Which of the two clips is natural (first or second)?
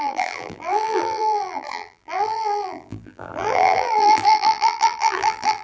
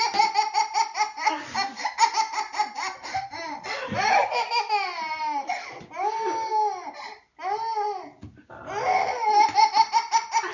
second